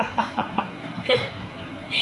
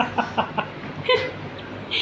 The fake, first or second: first